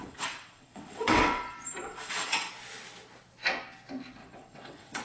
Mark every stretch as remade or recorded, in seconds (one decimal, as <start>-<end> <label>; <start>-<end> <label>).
0.0-2.5 remade; 2.5-4.2 recorded; 4.2-5.0 remade